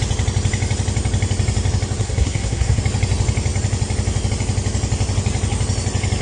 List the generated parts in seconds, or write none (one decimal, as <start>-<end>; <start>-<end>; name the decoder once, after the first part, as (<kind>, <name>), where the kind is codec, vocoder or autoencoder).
2.0-2.8 (codec, SNAC)